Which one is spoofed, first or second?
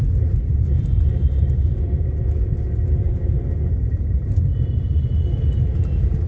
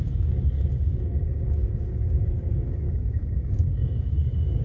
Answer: second